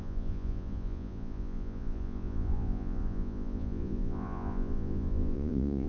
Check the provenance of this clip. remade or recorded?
remade